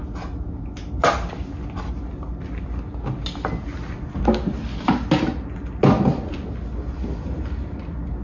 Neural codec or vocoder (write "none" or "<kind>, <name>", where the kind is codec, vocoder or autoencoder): none